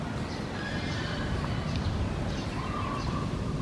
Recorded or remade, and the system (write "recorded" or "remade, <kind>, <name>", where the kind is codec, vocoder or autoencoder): recorded